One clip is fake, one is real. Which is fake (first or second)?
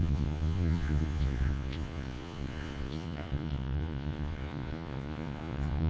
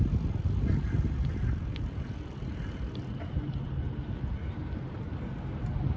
first